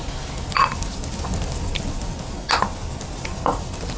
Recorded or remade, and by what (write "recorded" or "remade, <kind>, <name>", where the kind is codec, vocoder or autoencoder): recorded